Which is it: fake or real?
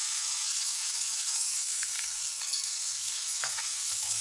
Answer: fake